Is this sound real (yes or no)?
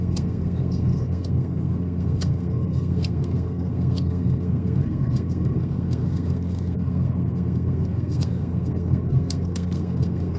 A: no